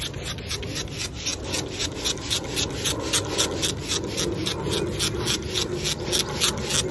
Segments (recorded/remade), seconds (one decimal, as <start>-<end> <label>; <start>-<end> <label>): 0.0-6.9 recorded

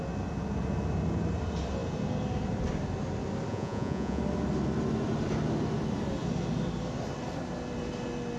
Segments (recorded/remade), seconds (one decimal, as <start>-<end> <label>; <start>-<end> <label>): 0.0-3.5 recorded; 3.5-4.2 remade; 4.2-8.4 recorded

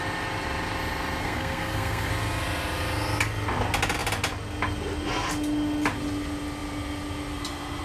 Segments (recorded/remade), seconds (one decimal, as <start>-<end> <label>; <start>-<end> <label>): 0.0-1.2 recorded; 1.2-2.1 remade; 2.1-7.8 recorded

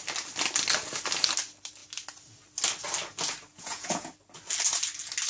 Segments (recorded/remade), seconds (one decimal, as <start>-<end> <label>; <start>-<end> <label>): 0.0-3.5 recorded; 3.5-4.1 remade; 4.1-5.3 recorded

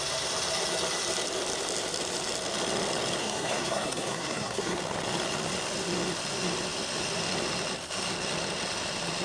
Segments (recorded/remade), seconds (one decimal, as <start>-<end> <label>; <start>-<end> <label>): 0.0-3.2 recorded; 3.2-4.8 remade; 4.8-9.2 recorded

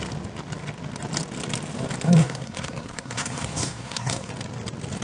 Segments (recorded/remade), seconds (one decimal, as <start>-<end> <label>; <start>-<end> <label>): 0.0-2.2 recorded; 2.2-4.3 remade; 4.3-5.0 recorded

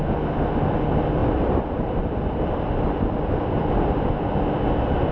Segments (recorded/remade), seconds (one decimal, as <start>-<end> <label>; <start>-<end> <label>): 0.0-1.2 recorded; 1.2-4.3 remade; 4.3-5.1 recorded